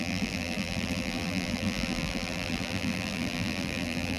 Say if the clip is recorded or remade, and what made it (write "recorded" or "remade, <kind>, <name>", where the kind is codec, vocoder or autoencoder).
remade, vocoder, BigVGAN v2